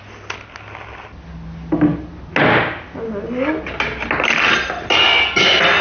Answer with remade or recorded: recorded